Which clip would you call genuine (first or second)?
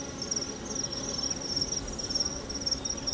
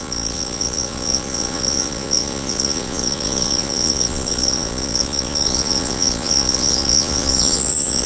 first